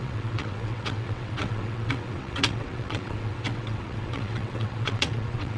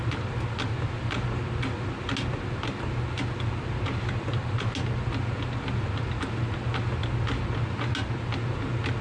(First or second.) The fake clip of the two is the first